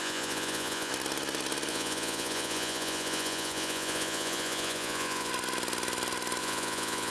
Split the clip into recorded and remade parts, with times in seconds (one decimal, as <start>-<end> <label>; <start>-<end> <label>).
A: 0.0-0.9 remade; 0.9-1.7 recorded; 1.7-5.3 remade; 5.3-6.4 recorded; 6.4-7.1 remade